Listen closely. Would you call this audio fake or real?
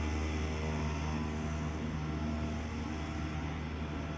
real